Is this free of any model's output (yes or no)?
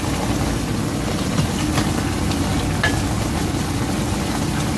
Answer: yes